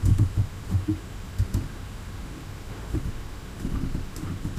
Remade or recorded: remade